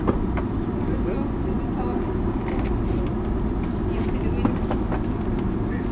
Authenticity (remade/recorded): recorded